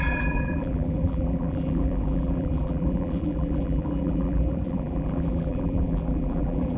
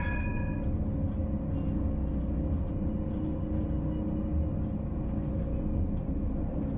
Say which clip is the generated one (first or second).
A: first